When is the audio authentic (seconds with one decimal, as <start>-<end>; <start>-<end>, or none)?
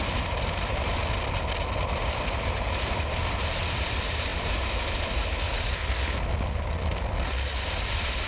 0.0-8.3